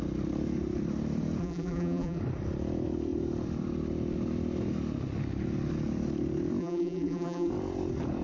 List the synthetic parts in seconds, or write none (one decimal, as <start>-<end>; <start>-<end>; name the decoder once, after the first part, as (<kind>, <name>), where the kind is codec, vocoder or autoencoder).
1.4-2.2 (vocoder, BigVGAN v2); 6.6-7.5